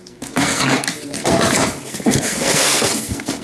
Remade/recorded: remade